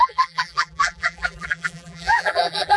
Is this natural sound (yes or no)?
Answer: no